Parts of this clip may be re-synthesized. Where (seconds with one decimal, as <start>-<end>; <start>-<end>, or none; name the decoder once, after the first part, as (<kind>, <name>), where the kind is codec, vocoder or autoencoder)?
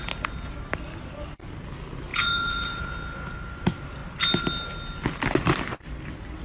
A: 2.1-2.8 (vocoder, Vocos)